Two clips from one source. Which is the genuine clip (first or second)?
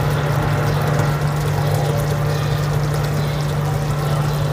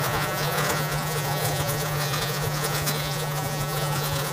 first